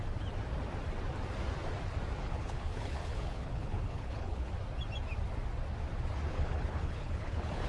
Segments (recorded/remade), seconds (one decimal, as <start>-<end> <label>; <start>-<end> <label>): 0.0-2.2 recorded; 2.2-4.5 remade; 4.5-6.3 recorded; 6.3-7.7 remade